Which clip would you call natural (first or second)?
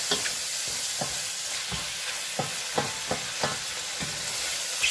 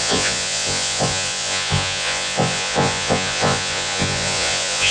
first